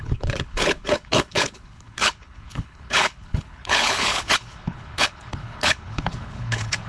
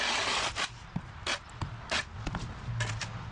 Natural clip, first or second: second